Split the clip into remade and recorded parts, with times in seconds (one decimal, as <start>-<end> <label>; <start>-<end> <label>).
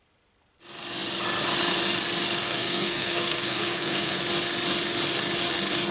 0.0-2.4 recorded; 2.4-4.2 remade; 4.2-5.9 recorded